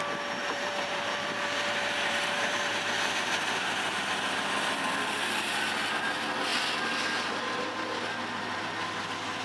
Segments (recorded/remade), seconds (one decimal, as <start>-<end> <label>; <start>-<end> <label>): 0.0-0.4 recorded; 0.4-2.8 remade; 2.8-9.4 recorded

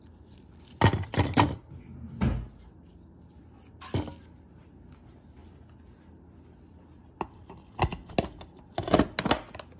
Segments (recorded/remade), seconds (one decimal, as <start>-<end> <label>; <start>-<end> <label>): 0.0-9.8 recorded

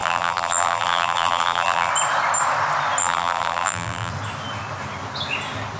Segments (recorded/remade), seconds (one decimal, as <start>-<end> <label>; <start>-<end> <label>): 0.0-1.9 remade; 1.9-3.0 recorded; 3.0-4.1 remade; 4.1-5.8 recorded

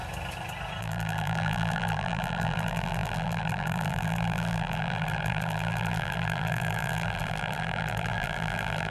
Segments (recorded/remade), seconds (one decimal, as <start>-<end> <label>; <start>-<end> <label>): 0.0-0.8 recorded; 0.8-8.9 remade

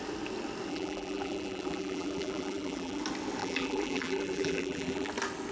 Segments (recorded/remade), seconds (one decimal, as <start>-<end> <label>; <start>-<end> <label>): 0.0-0.7 recorded; 0.7-3.0 remade; 3.0-3.4 recorded; 3.4-5.1 remade; 5.1-5.5 recorded

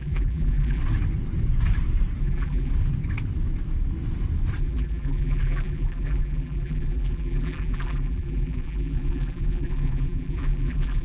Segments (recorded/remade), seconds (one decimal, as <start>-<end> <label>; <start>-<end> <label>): 0.0-0.8 remade; 0.8-2.2 recorded; 2.2-2.7 remade; 2.7-4.6 recorded; 4.6-11.0 remade

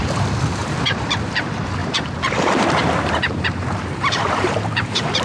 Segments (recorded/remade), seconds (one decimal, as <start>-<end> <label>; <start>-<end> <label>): 0.0-0.6 recorded; 0.6-1.2 remade; 1.2-1.8 recorded; 1.8-5.2 remade

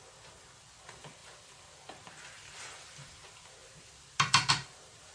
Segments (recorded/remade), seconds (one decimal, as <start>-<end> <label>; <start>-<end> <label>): 0.0-5.1 recorded